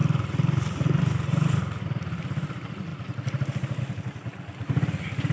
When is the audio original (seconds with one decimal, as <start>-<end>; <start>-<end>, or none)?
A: 1.6-2.9; 3.8-5.3